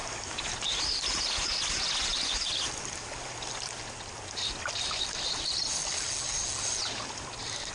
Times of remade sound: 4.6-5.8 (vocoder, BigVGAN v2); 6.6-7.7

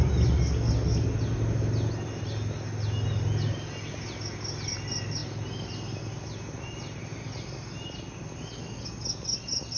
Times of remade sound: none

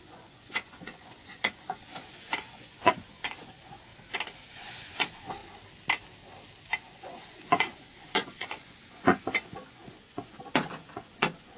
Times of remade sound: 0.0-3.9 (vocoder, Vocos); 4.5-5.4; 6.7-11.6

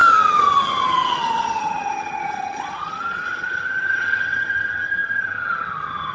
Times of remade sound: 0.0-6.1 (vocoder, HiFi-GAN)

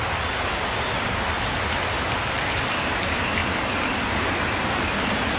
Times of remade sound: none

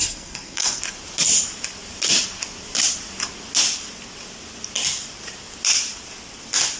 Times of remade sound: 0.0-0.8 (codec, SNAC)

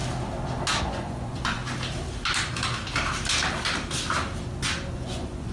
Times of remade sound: 0.8-1.6 (vocoder, Vocos); 4.9-5.5